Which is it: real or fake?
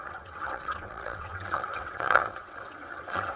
fake